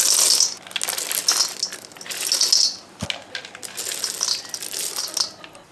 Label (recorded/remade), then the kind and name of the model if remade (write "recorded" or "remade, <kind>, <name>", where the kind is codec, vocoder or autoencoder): recorded